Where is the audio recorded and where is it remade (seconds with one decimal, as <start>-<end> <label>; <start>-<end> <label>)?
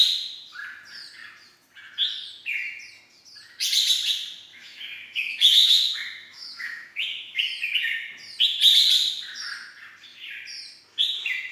0.0-4.5 recorded; 4.5-7.4 remade; 7.4-11.5 recorded